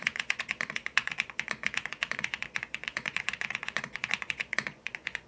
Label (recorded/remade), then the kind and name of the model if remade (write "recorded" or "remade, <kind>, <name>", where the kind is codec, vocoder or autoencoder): remade, vocoder, Vocos